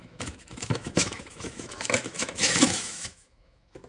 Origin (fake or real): fake